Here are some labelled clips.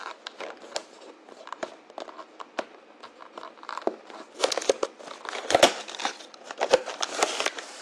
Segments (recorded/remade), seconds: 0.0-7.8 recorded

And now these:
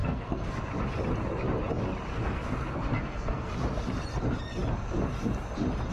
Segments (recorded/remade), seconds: 0.0-0.6 remade; 0.6-2.1 recorded; 2.1-3.5 remade; 3.5-5.9 recorded

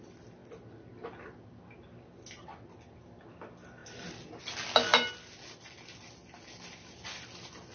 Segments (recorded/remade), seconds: 0.0-7.7 recorded

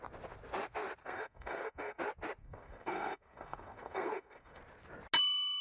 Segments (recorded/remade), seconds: 0.0-1.0 recorded; 1.0-2.0 remade; 2.0-2.4 recorded; 2.4-4.6 remade; 4.6-5.6 recorded

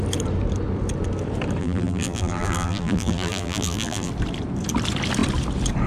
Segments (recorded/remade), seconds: 0.0-1.6 recorded; 1.6-4.1 remade; 4.1-5.9 recorded

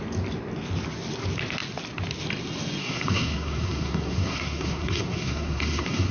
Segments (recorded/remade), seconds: 0.0-2.8 recorded; 2.8-6.1 remade